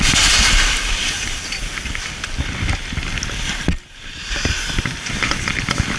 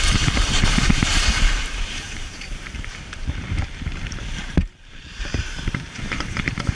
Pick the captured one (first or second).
first